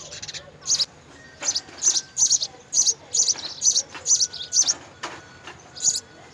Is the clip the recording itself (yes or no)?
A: yes